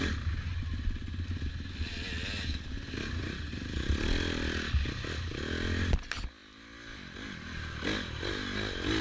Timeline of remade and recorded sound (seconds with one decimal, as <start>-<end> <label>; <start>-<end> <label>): 0.0-9.0 recorded